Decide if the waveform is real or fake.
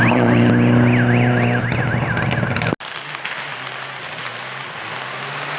real